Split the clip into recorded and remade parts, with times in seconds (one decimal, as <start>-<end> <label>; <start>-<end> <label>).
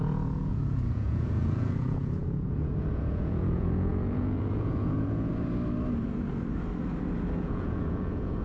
0.0-5.3 remade; 5.3-7.4 recorded; 7.4-8.4 remade